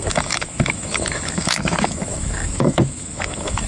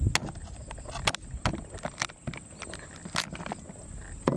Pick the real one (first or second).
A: second